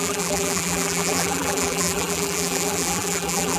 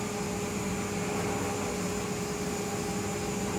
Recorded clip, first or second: second